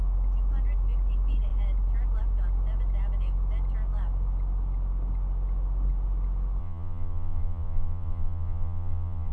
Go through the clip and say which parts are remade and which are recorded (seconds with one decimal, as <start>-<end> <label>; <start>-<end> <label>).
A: 0.0-6.6 recorded; 6.6-9.3 remade